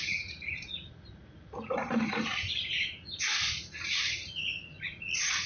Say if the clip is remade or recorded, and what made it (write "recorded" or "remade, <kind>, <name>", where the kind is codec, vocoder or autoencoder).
remade, vocoder, Vocos